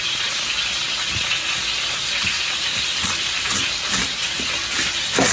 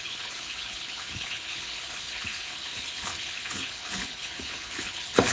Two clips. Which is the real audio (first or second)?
first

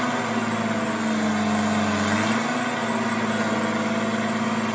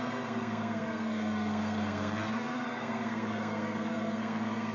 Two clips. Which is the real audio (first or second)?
first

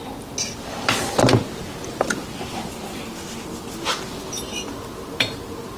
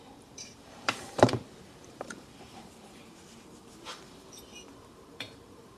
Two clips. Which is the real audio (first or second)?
first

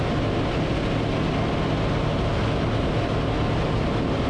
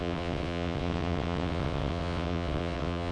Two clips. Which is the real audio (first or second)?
first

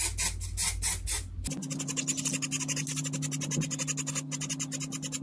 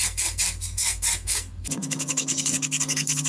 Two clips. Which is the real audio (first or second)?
first